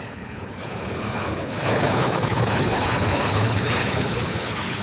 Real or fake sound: fake